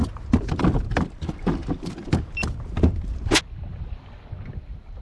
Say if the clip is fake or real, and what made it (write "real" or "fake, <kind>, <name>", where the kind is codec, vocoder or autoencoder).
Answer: real